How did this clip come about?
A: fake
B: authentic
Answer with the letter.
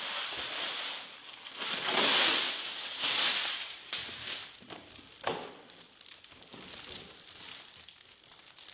B